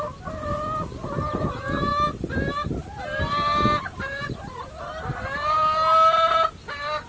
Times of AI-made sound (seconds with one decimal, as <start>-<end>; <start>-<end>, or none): none